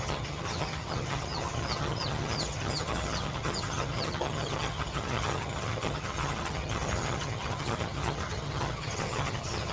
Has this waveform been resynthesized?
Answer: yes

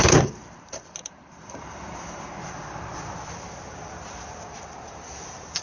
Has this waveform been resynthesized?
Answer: yes